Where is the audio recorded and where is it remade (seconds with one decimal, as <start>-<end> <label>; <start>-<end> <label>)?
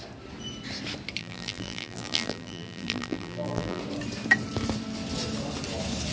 0.0-1.2 recorded; 1.2-3.8 remade; 3.8-6.1 recorded